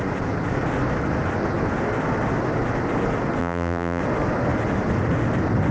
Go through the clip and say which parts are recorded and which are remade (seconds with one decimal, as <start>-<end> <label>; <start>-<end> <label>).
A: 0.0-3.4 recorded; 3.4-4.0 remade; 4.0-5.7 recorded